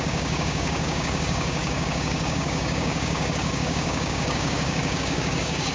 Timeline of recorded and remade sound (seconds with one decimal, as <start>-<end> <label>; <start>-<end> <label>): 0.0-5.7 remade